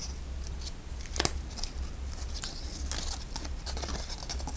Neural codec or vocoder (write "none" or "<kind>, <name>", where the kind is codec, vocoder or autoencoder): none